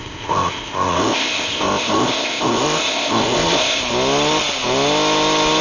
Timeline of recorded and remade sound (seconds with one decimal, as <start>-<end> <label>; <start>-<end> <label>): 0.0-3.8 remade; 3.8-5.6 recorded